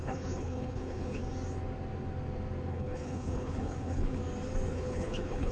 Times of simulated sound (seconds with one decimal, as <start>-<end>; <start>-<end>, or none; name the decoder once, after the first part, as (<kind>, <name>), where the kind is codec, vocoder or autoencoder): 0.0-1.2 (codec, HILCodec); 2.7-4.2; 4.7-5.5